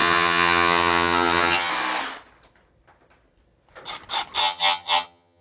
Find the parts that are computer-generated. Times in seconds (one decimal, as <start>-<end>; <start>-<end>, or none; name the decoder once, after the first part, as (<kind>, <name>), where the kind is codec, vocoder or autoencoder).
0.0-1.7 (vocoder, HiFi-GAN); 4.4-5.4